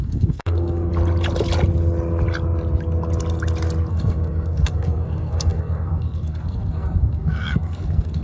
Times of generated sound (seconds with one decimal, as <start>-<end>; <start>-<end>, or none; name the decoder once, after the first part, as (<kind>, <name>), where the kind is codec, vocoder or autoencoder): 0.0-0.9 (codec, SNAC); 3.9-8.2